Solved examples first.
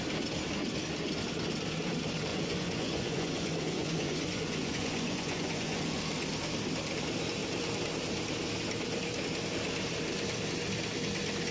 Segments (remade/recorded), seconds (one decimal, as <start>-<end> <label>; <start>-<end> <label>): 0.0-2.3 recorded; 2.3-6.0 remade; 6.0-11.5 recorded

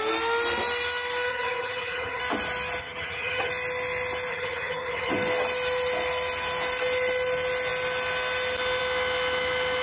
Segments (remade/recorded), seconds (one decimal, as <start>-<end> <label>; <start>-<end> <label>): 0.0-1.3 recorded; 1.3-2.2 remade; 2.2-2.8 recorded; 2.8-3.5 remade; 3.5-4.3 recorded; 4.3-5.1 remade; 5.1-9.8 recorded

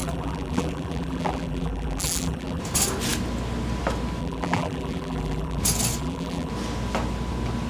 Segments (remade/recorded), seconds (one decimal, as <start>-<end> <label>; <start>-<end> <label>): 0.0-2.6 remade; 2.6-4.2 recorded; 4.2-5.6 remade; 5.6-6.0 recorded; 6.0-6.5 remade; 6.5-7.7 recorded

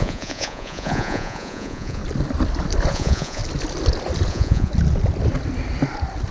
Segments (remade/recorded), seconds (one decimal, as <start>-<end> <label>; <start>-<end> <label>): 0.0-2.0 remade; 2.0-2.9 recorded; 2.9-3.4 remade; 3.4-4.3 recorded; 4.3-4.7 remade; 4.7-6.3 recorded